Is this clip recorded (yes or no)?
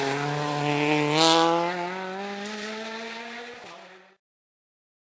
yes